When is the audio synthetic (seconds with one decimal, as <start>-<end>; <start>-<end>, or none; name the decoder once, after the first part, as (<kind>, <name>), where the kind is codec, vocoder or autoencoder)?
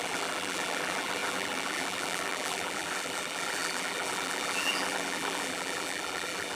0.0-6.6 (vocoder, BigVGAN v2)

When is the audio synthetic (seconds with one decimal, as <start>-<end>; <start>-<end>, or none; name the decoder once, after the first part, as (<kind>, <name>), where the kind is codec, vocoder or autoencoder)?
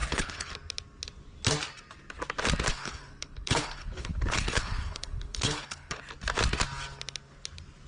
0.0-0.5 (codec, HILCodec); 2.7-6.0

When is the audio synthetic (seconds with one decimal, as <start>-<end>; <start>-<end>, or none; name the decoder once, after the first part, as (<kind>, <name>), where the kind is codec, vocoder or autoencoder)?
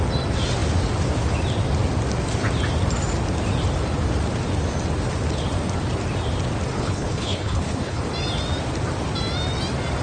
6.7-8.0 (codec, HILCodec)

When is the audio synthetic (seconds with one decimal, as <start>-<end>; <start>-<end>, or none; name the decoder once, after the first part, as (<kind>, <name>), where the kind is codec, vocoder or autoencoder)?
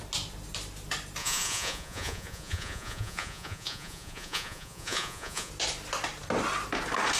1.2-5.5 (vocoder, Vocos)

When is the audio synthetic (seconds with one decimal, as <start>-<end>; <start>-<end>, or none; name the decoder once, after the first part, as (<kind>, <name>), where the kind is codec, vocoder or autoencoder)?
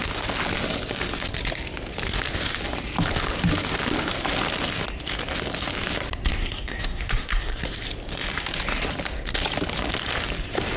6.4-7.6 (codec, SNAC)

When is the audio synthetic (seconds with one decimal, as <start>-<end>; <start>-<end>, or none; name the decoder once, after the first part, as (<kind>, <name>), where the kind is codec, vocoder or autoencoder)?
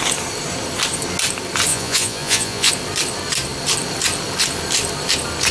1.7-2.7 (vocoder, Vocos)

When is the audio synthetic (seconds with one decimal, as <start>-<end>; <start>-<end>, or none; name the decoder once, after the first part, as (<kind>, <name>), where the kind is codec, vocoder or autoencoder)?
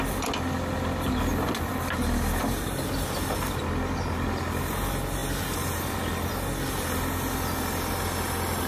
none